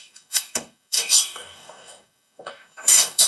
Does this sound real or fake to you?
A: fake